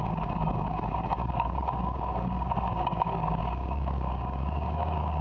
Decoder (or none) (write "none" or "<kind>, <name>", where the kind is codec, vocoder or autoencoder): codec, DAC